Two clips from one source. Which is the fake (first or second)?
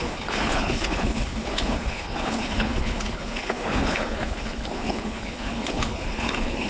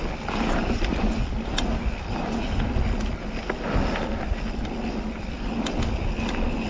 first